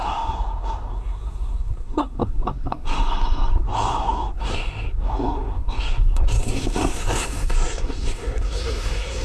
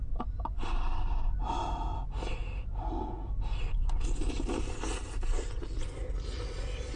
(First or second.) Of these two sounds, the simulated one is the first